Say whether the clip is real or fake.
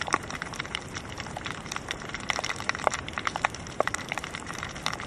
fake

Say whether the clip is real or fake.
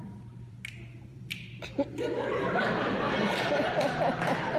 fake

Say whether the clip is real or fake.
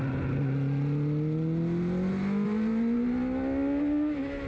real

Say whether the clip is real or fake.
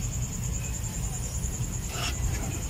fake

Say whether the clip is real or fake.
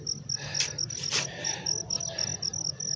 real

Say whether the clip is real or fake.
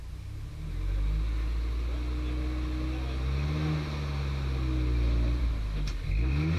real